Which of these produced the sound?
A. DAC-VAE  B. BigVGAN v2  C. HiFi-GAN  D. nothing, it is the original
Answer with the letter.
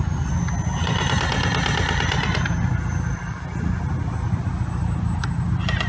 D